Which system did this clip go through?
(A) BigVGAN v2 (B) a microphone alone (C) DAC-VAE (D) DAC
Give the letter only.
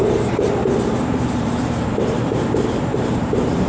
A